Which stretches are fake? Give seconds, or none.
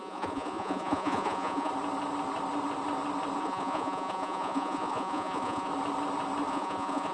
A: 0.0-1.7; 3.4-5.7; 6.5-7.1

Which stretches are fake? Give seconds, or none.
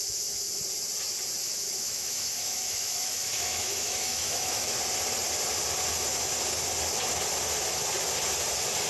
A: 0.0-0.6; 1.4-4.8